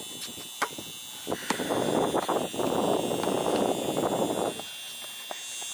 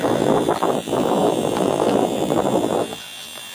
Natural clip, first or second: first